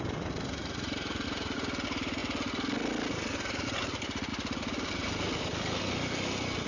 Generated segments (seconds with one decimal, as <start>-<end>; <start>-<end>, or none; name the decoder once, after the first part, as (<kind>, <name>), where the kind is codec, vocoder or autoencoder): none